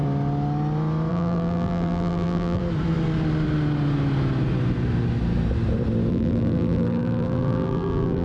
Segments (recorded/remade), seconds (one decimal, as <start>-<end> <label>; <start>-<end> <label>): 0.0-1.1 recorded; 1.1-2.6 remade; 2.6-6.1 recorded; 6.1-8.2 remade